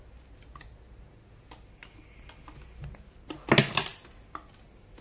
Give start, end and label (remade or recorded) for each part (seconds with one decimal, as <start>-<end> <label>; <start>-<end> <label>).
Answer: 0.0-5.0 recorded